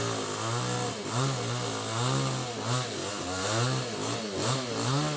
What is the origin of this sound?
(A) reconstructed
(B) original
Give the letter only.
B